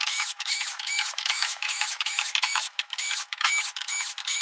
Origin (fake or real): fake